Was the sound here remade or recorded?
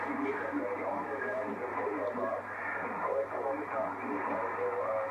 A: remade